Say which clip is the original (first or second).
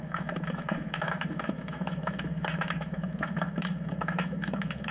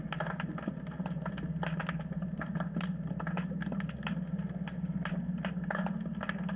second